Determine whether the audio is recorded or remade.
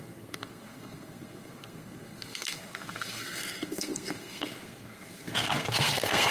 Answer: remade